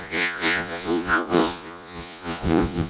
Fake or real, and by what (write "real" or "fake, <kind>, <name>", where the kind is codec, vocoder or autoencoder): fake, vocoder, Vocos